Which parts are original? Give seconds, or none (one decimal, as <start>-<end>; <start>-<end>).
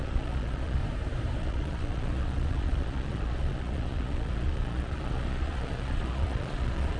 0.8-1.4